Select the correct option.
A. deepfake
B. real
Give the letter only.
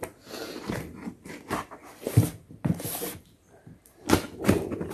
B